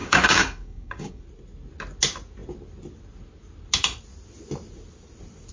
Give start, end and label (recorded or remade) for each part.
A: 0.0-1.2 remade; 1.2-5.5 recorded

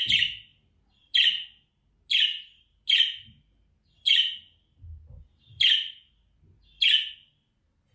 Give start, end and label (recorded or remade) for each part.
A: 0.0-7.9 recorded